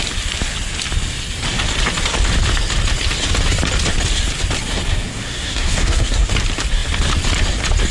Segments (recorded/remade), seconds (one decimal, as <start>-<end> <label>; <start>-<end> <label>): 0.0-5.1 recorded; 5.1-6.3 remade; 6.3-7.9 recorded